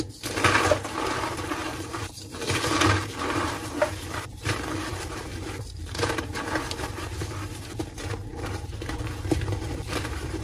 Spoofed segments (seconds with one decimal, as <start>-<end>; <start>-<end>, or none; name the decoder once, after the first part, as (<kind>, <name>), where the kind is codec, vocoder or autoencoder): 1.6-6.4 (vocoder, BigVGAN v2); 8.3-10.4